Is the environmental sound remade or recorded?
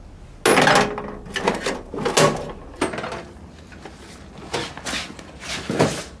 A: recorded